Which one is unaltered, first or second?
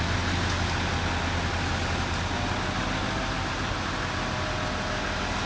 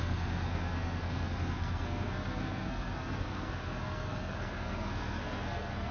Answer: first